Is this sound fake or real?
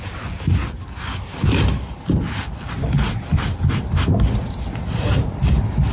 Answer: real